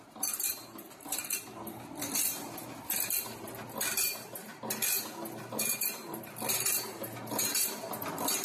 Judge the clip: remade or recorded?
recorded